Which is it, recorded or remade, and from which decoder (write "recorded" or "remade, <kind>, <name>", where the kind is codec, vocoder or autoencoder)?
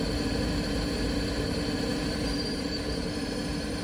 remade, vocoder, BigVGAN v2